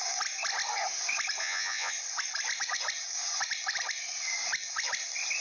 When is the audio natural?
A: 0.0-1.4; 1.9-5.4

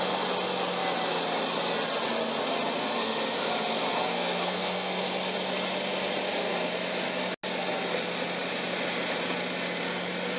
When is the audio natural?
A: 0.0-2.8; 3.4-4.1; 5.0-10.4

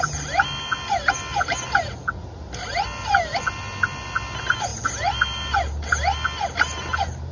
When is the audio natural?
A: 0.0-7.3

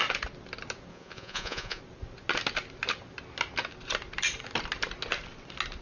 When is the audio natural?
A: 0.0-0.9; 1.8-5.8